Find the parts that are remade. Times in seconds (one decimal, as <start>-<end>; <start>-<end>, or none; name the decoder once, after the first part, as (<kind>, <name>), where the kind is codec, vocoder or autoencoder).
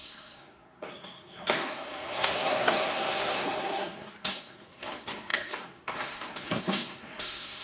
0.0-7.6 (codec, SNAC)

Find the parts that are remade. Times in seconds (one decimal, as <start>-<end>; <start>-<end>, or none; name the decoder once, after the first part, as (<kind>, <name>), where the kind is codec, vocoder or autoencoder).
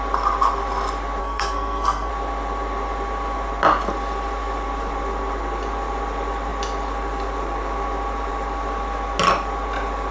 1.2-2.1 (codec, SNAC)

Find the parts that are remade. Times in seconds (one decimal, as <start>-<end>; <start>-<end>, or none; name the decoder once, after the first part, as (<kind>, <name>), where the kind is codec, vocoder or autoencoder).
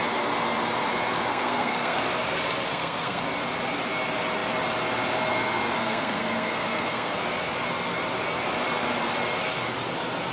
1.3-2.0 (codec, SNAC); 2.7-3.2; 5.8-7.1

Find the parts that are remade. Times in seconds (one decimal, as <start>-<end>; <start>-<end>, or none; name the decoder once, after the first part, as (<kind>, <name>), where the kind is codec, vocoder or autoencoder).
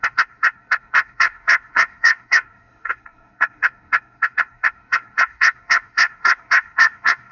0.0-7.3 (codec, SNAC)